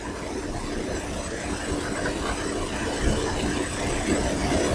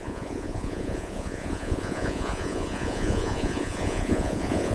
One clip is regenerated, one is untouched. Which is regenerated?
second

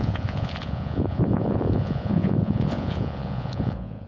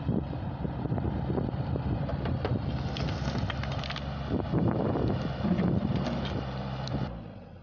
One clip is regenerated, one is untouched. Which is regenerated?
first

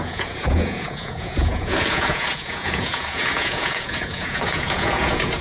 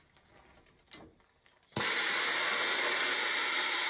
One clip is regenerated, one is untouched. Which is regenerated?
first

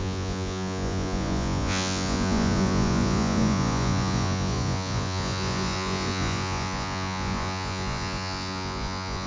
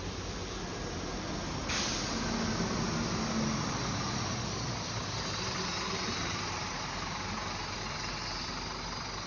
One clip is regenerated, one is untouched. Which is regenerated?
first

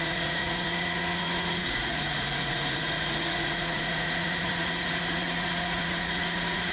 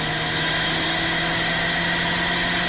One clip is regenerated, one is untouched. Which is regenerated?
first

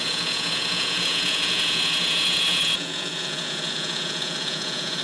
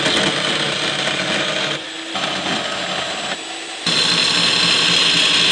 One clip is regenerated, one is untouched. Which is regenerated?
first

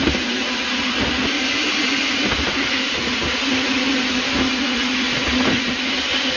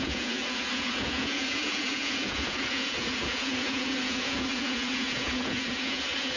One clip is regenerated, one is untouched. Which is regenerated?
second